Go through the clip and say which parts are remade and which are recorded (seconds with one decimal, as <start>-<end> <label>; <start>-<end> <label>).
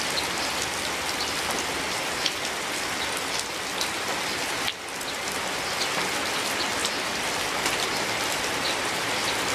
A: 0.0-9.5 recorded